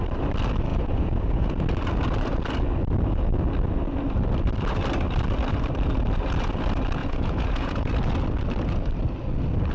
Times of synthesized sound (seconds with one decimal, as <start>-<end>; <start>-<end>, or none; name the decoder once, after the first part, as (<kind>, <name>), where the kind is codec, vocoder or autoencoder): 0.7-1.6 (vocoder, Vocos); 7.0-7.9